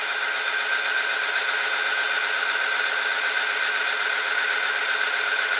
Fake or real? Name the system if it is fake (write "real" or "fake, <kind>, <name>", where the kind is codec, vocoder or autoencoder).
real